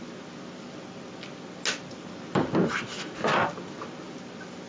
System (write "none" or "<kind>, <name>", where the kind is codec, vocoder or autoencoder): none